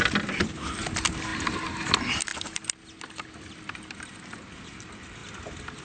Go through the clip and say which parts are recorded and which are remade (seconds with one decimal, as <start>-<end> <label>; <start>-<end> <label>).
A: 0.0-5.8 recorded